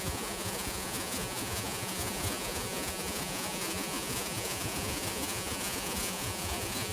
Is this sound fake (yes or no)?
yes